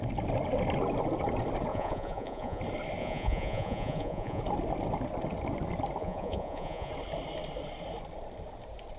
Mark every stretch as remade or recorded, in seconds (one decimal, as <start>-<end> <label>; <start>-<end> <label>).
0.0-1.7 recorded; 1.7-2.6 remade; 2.6-3.0 recorded; 3.0-4.4 remade; 4.4-6.0 recorded; 6.0-6.9 remade; 6.9-9.0 recorded